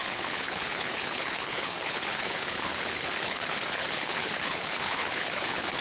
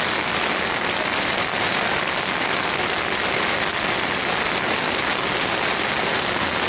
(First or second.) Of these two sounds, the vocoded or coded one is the first